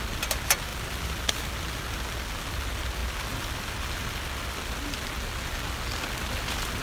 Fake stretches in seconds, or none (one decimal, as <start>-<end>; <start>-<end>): none